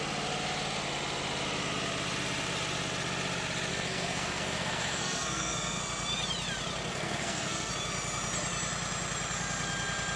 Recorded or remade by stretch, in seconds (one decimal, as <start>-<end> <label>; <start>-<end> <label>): 0.0-3.7 recorded; 3.7-5.8 remade; 5.8-6.9 recorded; 6.9-7.7 remade; 7.7-10.2 recorded